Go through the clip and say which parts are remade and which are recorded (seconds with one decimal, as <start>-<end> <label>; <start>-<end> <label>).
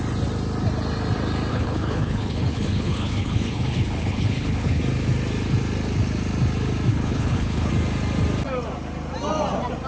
0.0-1.5 recorded; 1.5-4.8 remade; 4.8-6.9 recorded; 6.9-7.7 remade; 7.7-9.9 recorded